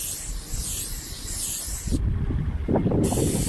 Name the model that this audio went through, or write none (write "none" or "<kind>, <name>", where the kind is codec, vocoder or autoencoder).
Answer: none